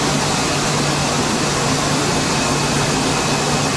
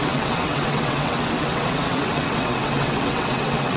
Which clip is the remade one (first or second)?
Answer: second